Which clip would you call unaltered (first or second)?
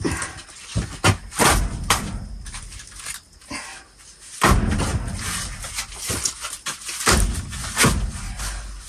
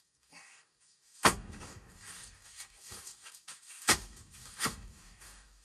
first